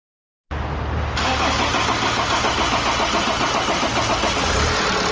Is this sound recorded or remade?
recorded